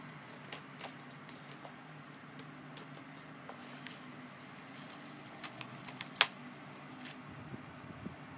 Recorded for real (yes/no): yes